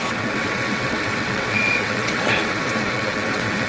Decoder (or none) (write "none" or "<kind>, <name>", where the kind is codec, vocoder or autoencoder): vocoder, WaveNeXt